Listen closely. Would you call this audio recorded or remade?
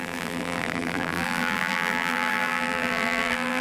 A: remade